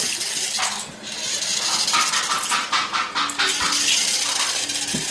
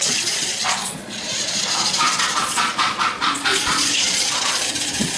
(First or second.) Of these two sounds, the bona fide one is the first